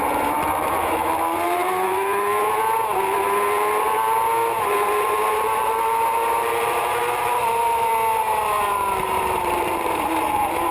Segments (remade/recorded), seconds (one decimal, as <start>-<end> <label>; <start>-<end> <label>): 0.0-2.3 remade; 2.3-5.3 recorded; 5.3-7.9 remade; 7.9-9.0 recorded; 9.0-10.7 remade